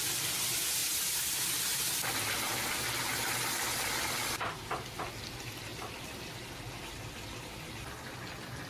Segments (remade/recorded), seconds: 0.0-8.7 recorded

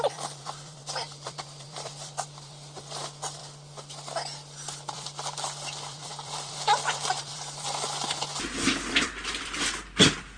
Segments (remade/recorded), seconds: 0.0-3.4 remade; 3.4-4.9 recorded; 4.9-10.4 remade

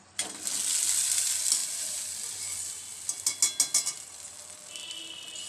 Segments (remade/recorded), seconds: 0.0-5.5 recorded

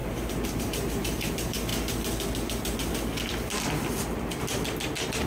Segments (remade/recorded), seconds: 0.0-1.7 remade; 1.7-5.3 recorded

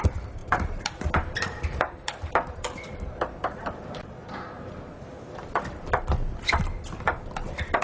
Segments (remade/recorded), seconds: 0.0-0.4 recorded; 0.4-5.1 remade; 5.1-7.8 recorded

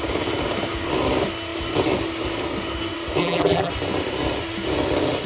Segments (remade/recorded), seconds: 0.0-3.2 recorded; 3.2-3.7 remade; 3.7-5.3 recorded